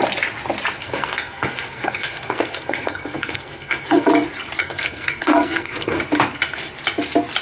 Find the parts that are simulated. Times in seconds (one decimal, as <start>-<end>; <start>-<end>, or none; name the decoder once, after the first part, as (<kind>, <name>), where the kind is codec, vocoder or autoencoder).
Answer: 0.8-4.1 (codec, SNAC); 4.6-6.0